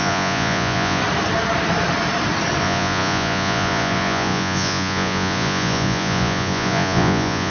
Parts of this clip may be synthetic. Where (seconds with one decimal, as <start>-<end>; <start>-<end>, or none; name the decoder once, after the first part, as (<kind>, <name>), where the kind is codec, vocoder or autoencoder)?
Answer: 0.0-1.0 (vocoder, Vocos); 2.6-7.5